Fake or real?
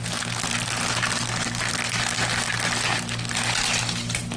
real